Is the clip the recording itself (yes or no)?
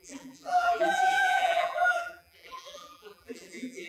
no